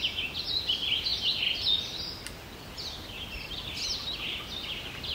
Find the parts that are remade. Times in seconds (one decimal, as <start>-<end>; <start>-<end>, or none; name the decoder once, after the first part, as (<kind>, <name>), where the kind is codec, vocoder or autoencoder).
none